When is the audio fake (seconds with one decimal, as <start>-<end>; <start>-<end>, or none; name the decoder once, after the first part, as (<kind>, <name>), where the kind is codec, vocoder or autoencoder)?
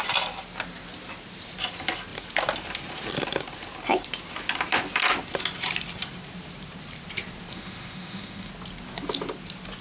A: 7.5-8.5 (autoencoder, DAC-VAE)